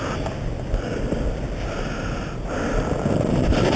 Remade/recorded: recorded